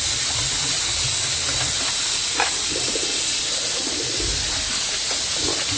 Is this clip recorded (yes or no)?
yes